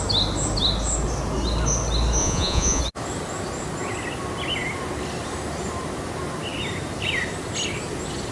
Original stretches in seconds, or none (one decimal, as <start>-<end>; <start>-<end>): 0.0-2.2; 2.8-8.3

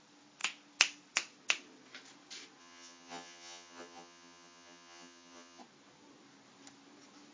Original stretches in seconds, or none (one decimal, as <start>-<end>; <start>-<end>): 0.0-2.6; 5.6-7.3

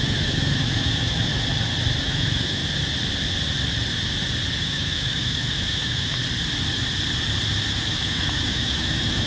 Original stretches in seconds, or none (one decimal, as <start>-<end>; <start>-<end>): 1.3-2.0; 2.6-4.6; 6.2-7.9

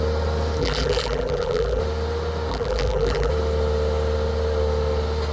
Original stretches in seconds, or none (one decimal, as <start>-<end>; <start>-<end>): 0.0-0.6; 1.8-2.5; 3.3-5.3

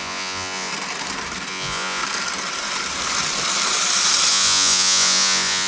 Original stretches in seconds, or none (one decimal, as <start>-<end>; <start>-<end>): 0.7-1.5; 2.0-4.3

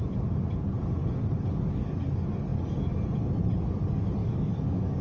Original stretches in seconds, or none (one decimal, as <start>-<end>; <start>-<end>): 0.0-1.0; 1.8-4.2

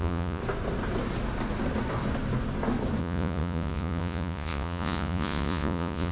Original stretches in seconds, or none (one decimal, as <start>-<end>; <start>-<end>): 0.4-3.0